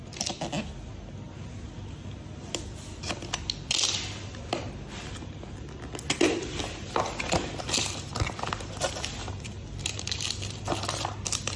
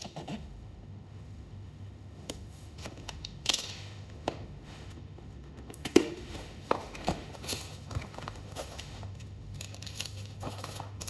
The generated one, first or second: second